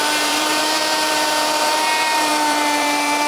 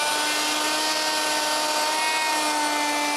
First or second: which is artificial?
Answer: first